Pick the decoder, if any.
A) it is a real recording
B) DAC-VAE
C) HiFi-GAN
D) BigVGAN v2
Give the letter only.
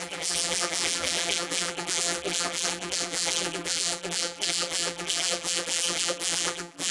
D